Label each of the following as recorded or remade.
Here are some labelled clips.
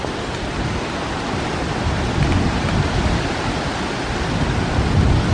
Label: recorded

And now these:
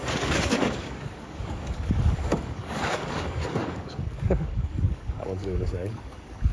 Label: remade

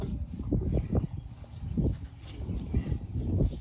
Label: recorded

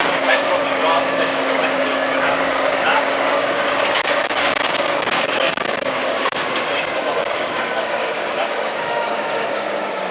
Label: remade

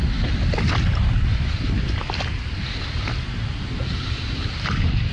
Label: recorded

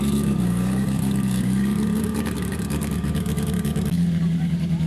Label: remade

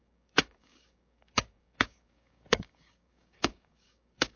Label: remade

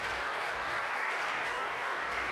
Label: remade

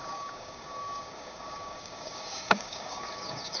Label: remade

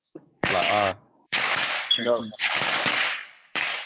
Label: remade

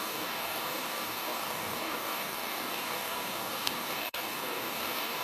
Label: remade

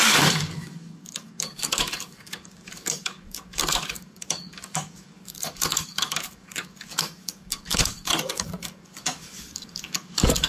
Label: remade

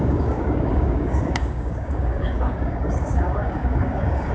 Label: remade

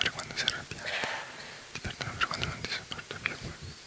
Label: recorded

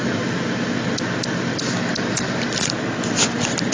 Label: recorded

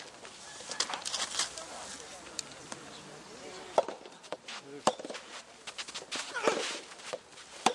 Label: recorded